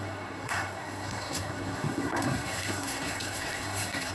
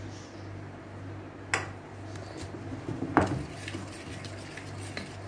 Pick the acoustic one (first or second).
second